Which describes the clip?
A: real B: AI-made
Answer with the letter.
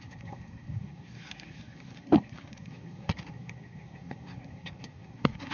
B